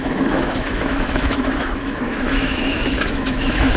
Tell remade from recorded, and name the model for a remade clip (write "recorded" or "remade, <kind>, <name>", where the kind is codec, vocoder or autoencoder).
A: remade, autoencoder, DAC-VAE